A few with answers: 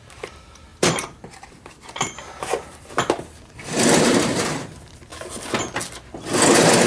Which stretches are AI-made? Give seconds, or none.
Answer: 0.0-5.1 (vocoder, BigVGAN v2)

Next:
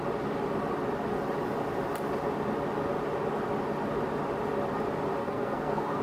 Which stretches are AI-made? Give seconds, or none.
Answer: 5.2-6.0 (codec, SNAC)

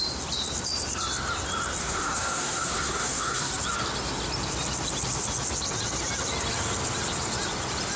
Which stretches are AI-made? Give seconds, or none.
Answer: 1.8-3.5 (codec, SNAC)